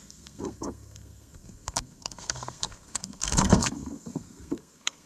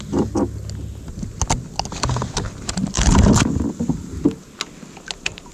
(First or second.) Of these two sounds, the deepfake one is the first